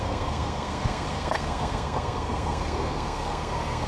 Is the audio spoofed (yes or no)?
yes